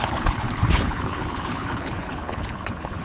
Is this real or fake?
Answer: fake